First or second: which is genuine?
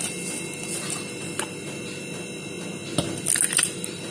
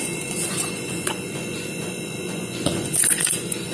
first